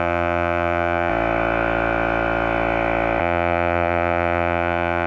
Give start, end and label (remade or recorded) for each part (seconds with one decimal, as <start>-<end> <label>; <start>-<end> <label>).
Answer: 0.0-1.1 remade; 1.1-3.2 recorded; 3.2-5.1 remade